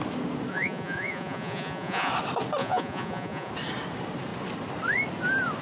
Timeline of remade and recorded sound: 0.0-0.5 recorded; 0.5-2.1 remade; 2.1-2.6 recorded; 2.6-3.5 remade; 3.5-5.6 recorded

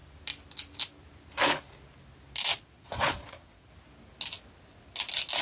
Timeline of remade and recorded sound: 0.0-2.5 recorded; 2.5-3.7 remade; 3.7-5.4 recorded

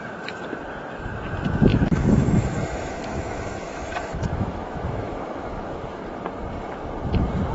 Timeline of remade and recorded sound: 0.0-1.7 recorded; 1.7-6.0 remade; 6.0-7.5 recorded

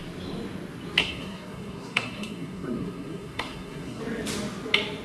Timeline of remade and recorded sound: 0.0-1.0 recorded; 1.0-4.0 remade; 4.0-5.0 recorded

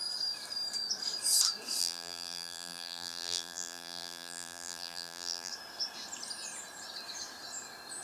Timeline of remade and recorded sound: 0.0-1.8 recorded; 1.8-5.5 remade; 5.5-8.0 recorded